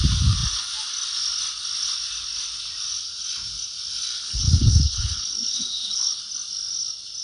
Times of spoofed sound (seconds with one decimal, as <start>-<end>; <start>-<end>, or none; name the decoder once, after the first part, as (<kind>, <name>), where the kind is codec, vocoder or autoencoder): 4.1-6.2 (codec, HILCodec)